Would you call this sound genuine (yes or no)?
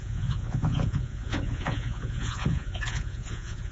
no